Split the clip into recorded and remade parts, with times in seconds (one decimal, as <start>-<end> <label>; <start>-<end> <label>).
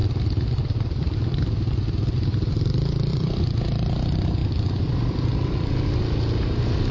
0.0-1.0 recorded; 1.0-1.5 remade; 1.5-3.1 recorded; 3.1-3.6 remade; 3.6-4.4 recorded; 4.4-5.3 remade; 5.3-6.9 recorded